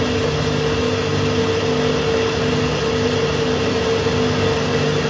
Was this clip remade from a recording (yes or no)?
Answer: no